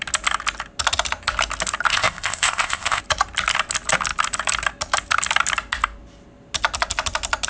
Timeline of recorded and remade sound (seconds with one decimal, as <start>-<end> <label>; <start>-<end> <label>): 0.0-1.9 recorded; 1.9-3.0 remade; 3.0-7.5 recorded